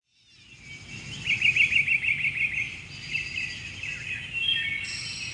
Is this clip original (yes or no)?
yes